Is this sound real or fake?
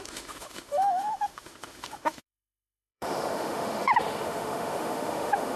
fake